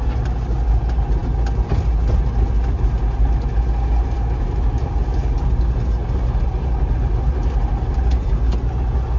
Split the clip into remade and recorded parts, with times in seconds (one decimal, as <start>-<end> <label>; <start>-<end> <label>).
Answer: 0.0-9.2 recorded